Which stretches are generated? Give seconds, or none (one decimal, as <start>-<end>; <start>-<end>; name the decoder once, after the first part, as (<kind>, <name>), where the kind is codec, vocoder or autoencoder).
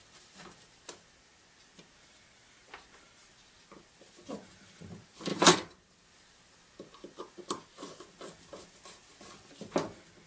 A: 0.0-0.6 (vocoder, BigVGAN v2); 5.3-7.4